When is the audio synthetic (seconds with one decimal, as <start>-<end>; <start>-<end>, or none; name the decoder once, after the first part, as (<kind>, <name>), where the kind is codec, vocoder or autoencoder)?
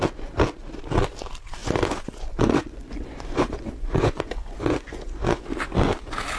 1.6-5.4 (vocoder, Vocos)